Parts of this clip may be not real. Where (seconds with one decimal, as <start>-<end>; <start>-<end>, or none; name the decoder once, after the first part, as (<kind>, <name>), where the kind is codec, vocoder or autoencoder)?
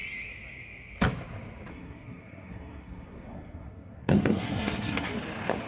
1.7-5.1 (codec, SNAC)